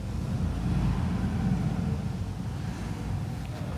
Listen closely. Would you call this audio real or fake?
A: real